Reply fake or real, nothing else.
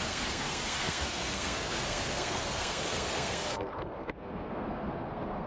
fake